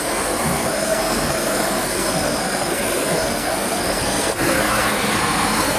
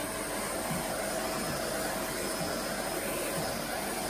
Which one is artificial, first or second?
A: first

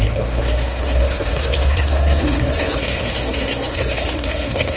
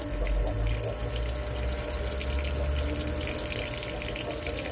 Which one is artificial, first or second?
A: first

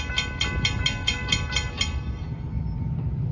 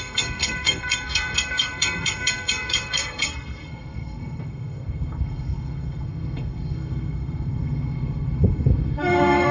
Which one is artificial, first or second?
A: second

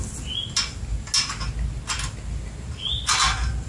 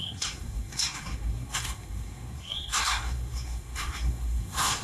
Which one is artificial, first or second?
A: second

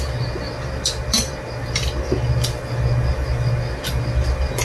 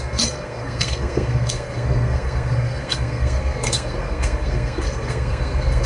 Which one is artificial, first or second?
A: second